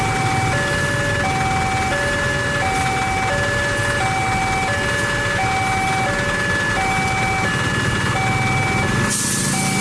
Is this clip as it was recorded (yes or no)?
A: yes